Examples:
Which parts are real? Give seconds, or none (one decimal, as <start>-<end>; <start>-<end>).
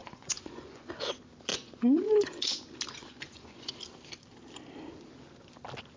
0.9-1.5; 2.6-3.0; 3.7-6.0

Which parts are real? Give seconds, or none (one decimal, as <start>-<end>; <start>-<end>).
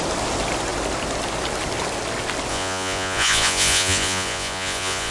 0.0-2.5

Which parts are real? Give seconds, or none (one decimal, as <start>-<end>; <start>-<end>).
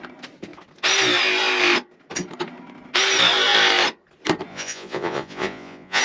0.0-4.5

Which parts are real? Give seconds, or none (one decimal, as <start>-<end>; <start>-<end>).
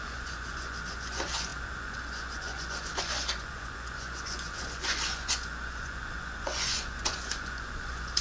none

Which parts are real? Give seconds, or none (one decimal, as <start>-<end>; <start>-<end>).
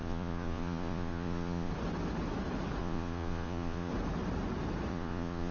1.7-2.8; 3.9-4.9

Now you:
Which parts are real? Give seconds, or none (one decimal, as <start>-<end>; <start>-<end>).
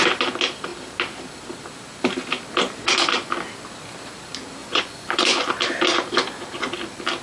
0.0-4.6; 5.5-7.2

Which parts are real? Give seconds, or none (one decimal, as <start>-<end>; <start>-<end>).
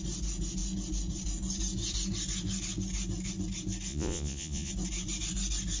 0.0-3.9; 4.7-5.8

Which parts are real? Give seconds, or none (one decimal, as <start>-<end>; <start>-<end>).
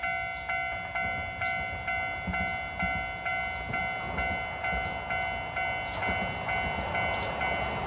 0.0-7.9